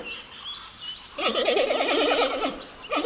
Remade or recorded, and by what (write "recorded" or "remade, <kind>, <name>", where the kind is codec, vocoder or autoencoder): recorded